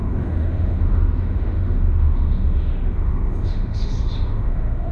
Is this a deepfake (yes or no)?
yes